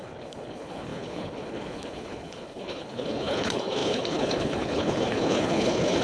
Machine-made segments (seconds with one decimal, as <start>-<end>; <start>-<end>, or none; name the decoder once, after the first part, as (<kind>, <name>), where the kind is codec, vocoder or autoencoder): 0.0-6.0 (codec, HILCodec)